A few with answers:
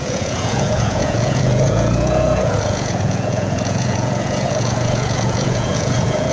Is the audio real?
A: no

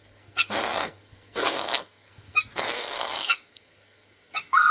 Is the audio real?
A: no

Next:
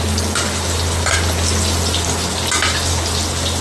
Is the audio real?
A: yes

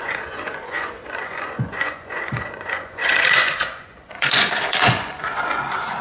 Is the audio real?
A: no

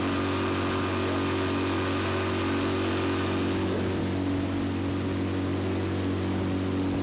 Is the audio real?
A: yes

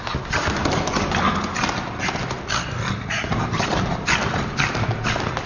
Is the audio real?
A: yes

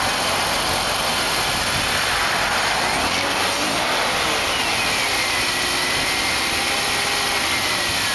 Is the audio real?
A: yes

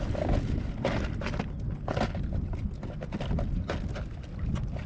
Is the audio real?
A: yes